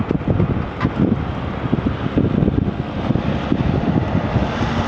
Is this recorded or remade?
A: recorded